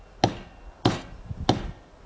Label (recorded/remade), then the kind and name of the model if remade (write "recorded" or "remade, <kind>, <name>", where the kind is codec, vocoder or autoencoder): recorded